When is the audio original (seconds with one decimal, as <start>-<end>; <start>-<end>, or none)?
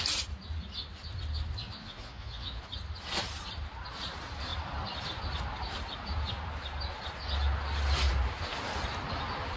0.0-1.6; 2.6-9.6